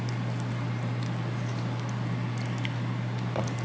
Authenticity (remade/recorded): recorded